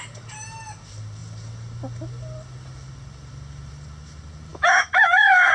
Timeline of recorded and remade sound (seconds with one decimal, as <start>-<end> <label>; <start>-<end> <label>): 0.0-4.5 recorded; 4.5-5.5 remade